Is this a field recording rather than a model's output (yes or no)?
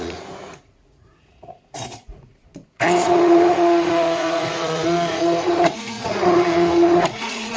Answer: no